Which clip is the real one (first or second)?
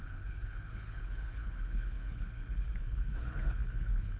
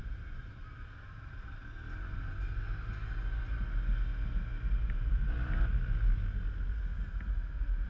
second